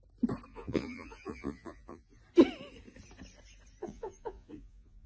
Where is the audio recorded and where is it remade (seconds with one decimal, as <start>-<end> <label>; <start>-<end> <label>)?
0.0-0.5 recorded; 0.5-2.2 remade; 2.2-3.8 recorded; 3.8-5.1 remade